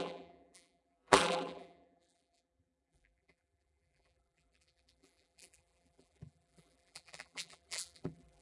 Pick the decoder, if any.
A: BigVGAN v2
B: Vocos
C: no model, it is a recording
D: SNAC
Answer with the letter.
A